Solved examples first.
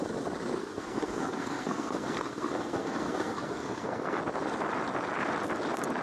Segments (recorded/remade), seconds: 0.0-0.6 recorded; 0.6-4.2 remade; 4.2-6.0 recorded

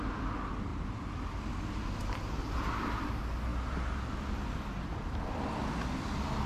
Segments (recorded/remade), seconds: 0.0-6.5 recorded

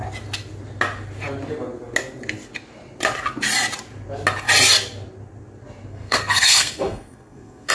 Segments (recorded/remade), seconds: 0.0-5.9 recorded; 5.9-7.7 remade

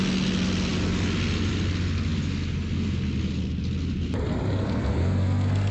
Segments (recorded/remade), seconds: 0.0-4.6 recorded; 4.6-5.7 remade

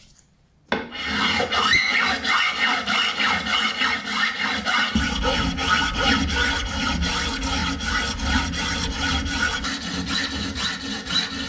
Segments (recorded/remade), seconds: 0.0-11.5 recorded

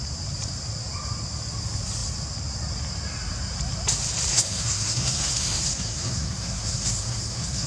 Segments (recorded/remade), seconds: 0.0-4.3 recorded; 4.3-7.7 remade

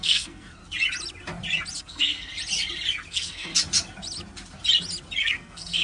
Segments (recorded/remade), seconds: 0.0-0.6 remade; 0.6-1.8 recorded; 1.8-2.3 remade; 2.3-3.1 recorded; 3.1-3.5 remade; 3.5-5.2 recorded; 5.2-5.8 remade